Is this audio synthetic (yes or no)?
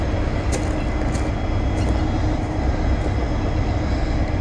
no